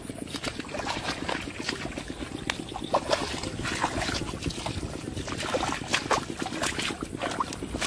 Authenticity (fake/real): real